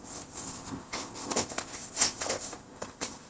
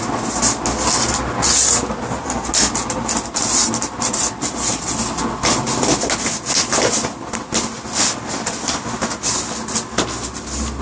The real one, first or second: second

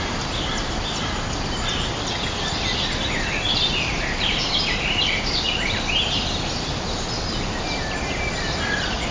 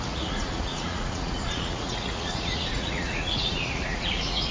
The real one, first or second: first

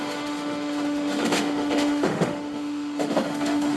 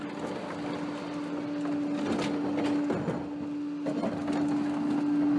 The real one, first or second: second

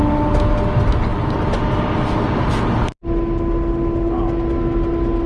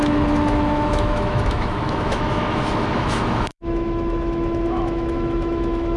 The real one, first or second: first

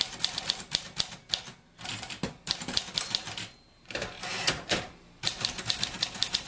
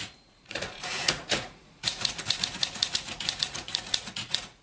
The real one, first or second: first